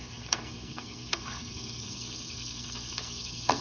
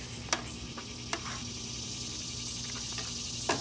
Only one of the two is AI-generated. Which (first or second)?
first